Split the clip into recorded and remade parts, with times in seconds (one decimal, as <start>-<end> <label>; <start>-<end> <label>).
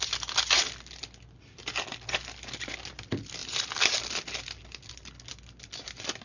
0.0-6.2 recorded